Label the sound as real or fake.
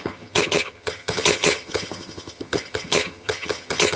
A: fake